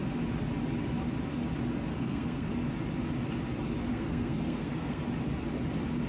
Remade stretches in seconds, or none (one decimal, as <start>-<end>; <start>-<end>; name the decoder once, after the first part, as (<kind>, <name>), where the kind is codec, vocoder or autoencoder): 1.9-2.5 (codec, SNAC); 3.9-5.0